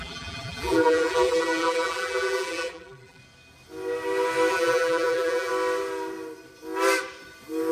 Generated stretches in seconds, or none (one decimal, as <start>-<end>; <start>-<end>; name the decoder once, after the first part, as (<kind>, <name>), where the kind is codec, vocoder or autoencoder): 0.0-3.2 (vocoder, BigVGAN v2); 4.5-5.5